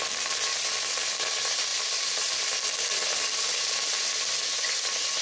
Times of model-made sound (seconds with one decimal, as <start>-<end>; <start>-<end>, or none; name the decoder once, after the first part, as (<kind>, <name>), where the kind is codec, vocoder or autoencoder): none